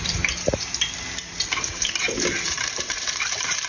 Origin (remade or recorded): remade